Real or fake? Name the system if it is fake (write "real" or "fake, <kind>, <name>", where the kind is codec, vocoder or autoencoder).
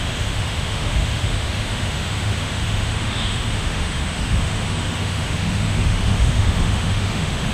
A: fake, autoencoder, DAC-VAE